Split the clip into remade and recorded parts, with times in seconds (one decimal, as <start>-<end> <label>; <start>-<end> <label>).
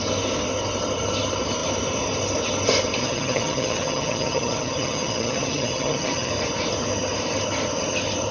0.0-3.0 recorded; 3.0-6.3 remade; 6.3-8.3 recorded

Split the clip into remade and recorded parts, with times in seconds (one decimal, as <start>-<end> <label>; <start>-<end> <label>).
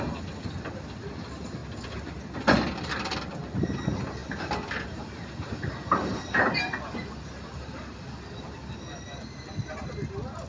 0.0-10.5 recorded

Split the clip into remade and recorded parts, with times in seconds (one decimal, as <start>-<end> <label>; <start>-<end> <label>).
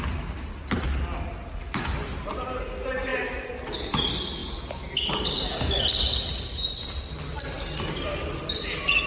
0.0-9.1 recorded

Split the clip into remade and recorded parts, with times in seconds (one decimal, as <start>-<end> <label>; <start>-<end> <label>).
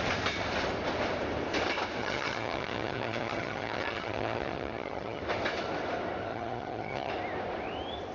0.0-2.0 recorded; 2.0-5.2 remade; 5.2-6.3 recorded; 6.3-7.1 remade; 7.1-8.1 recorded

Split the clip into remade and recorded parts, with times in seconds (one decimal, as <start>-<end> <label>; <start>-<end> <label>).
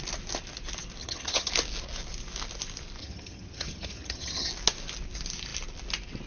0.0-1.0 recorded; 1.0-1.5 remade; 1.5-3.0 recorded; 3.0-4.5 remade; 4.5-6.3 recorded